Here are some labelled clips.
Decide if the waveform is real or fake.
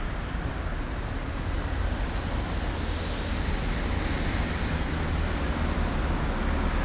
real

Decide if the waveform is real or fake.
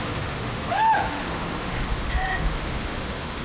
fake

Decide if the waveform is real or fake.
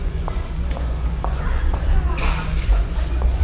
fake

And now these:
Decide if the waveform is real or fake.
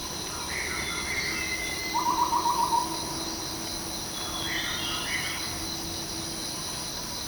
real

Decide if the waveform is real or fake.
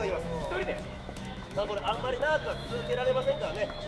fake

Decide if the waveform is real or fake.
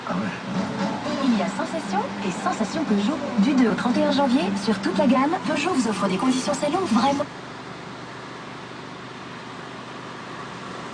real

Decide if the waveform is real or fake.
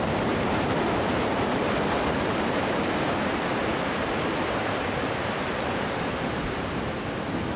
fake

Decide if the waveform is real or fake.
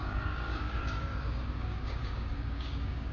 fake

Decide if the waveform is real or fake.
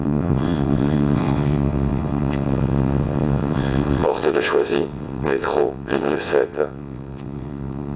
fake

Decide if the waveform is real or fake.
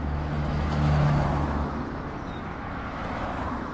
fake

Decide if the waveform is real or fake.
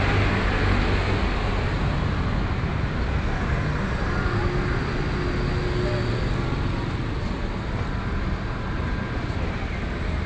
real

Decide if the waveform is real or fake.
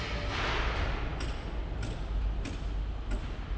real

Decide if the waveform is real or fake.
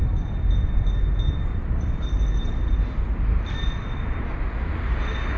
real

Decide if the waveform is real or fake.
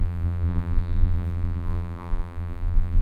fake